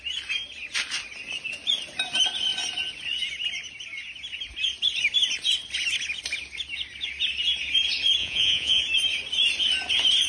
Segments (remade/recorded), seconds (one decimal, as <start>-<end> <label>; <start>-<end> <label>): 0.0-8.2 recorded; 8.2-8.8 remade; 8.8-10.3 recorded